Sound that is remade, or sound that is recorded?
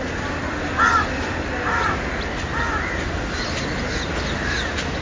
recorded